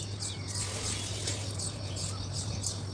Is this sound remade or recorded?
recorded